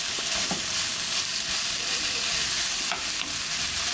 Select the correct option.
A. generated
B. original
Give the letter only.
B